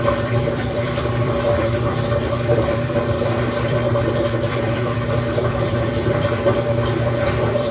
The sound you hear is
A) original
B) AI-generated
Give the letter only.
B